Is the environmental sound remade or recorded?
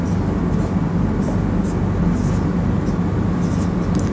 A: recorded